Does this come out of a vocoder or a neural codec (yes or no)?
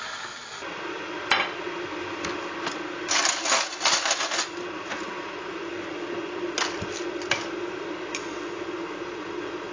no